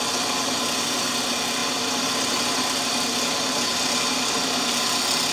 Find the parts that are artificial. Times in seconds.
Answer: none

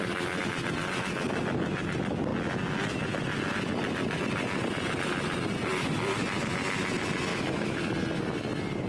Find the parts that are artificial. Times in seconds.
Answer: 7.3-7.8 (autoencoder, DAC-VAE)

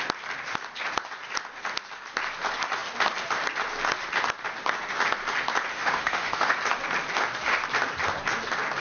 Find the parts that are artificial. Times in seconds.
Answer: 5.7-6.6 (autoencoder, DAC-VAE)